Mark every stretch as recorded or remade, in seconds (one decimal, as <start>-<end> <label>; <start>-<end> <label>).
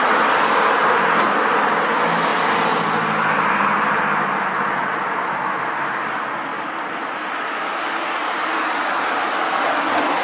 0.0-10.2 recorded